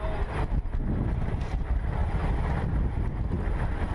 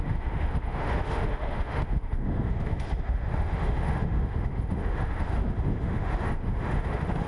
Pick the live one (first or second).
first